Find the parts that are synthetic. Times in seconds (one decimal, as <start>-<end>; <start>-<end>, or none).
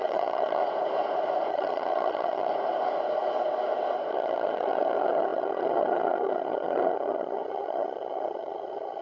0.0-0.6; 1.5-2.5; 4.1-9.0